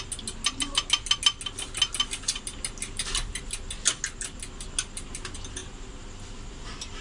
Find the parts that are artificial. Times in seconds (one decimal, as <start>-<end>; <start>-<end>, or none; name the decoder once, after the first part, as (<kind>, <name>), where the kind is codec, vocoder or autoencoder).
none